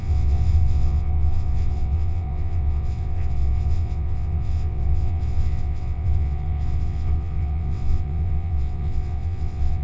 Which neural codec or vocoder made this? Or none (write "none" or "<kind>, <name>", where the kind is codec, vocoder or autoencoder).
vocoder, WaveNeXt